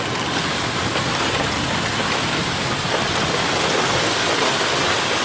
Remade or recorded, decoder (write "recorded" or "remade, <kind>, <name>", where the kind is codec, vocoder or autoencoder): recorded